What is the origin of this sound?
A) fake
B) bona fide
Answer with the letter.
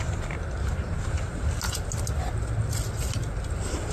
B